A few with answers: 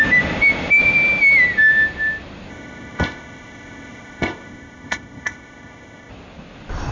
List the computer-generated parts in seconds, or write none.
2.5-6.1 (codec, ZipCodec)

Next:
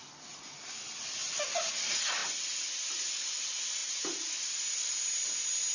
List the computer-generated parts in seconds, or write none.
3.8-4.3 (vocoder, BigVGAN v2)

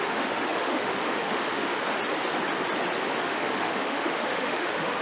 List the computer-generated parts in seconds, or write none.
0.0-1.8 (autoencoder, DAC-VAE); 3.2-5.0

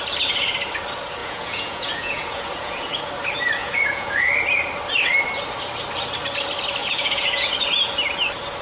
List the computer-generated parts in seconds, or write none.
1.2-3.1 (vocoder, Vocos); 3.6-4.3; 6.8-7.5

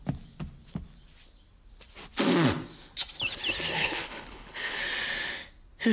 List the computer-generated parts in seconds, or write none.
3.7-4.8 (codec, HILCodec)

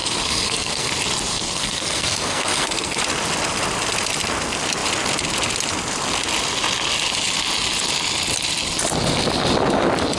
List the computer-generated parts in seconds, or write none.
0.0-0.9 (codec, SNAC); 1.3-3.0

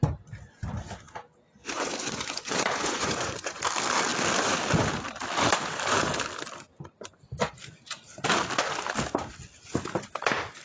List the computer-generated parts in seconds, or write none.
1.6-3.6 (vocoder, Vocos)